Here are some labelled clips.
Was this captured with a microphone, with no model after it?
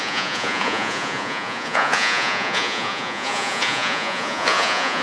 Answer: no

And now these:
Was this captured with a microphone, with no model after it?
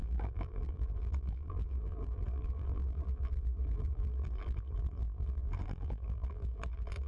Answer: no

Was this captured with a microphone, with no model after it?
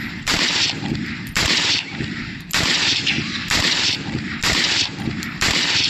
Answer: no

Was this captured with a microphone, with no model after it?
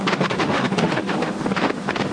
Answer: no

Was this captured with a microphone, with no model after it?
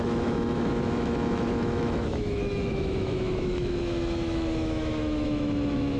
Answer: no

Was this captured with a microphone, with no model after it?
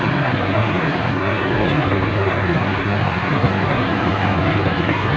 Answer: no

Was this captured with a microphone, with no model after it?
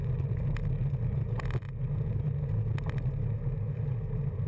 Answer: yes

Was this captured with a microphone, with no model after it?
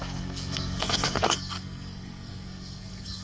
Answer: no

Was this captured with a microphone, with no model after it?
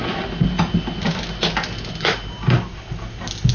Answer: yes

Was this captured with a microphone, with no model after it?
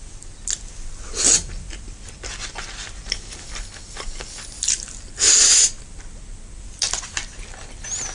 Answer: yes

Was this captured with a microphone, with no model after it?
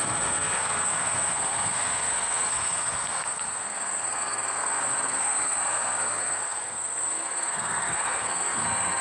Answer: no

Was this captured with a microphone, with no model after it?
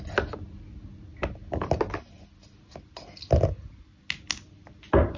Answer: yes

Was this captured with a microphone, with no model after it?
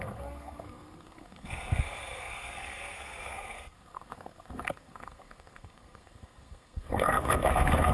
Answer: no